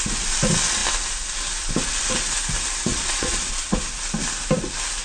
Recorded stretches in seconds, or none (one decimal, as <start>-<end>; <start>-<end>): 0.0-2.9; 3.8-5.0